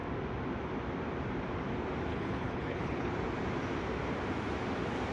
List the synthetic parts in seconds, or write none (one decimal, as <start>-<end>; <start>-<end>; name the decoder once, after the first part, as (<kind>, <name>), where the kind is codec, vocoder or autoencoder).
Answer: 2.1-3.1 (codec, HILCodec)